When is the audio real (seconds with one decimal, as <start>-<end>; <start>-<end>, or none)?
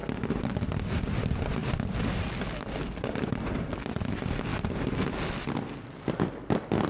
0.0-6.9